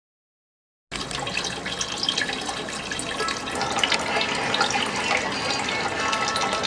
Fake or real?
real